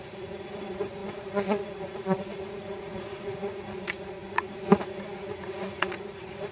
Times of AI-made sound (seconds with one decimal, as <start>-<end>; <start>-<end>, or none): 0.0-6.5